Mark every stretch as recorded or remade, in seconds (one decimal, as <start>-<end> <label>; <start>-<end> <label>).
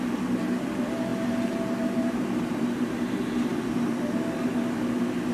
0.0-5.3 recorded